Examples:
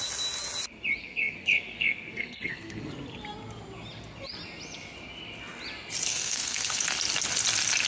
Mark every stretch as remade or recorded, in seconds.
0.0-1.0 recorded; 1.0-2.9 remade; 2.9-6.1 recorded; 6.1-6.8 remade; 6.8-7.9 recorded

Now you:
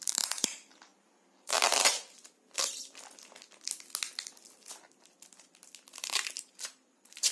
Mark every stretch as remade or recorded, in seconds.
0.0-2.2 remade; 2.2-6.0 recorded; 6.0-7.3 remade

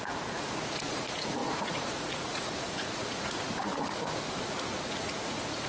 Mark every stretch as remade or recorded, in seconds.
0.0-3.7 remade; 3.7-4.3 recorded; 4.3-5.7 remade

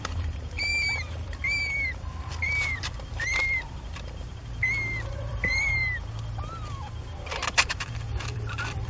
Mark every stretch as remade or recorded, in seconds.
0.0-4.4 remade; 4.4-5.1 recorded; 5.1-5.8 remade; 5.8-7.5 recorded; 7.5-8.9 remade

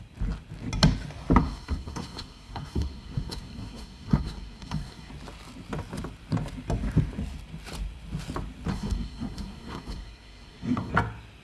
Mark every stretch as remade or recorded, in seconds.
0.0-1.4 recorded; 1.4-5.1 remade; 5.1-8.7 recorded; 8.7-10.9 remade; 10.9-11.4 recorded

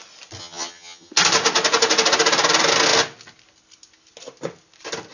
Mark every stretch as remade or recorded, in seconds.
0.0-0.4 recorded; 0.4-1.1 remade; 1.1-5.1 recorded

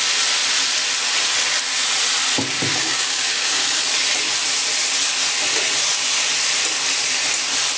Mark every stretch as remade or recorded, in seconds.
0.0-2.7 recorded; 2.7-3.8 remade; 3.8-7.8 recorded